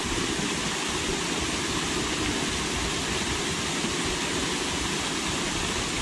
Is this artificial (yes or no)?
no